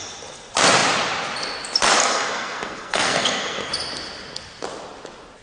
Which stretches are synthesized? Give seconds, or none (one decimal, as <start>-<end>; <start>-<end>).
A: 2.0-3.7

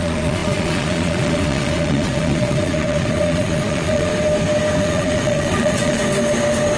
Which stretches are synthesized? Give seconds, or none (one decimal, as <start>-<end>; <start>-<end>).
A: 0.0-4.1; 4.8-6.0